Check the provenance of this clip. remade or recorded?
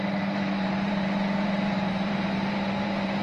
remade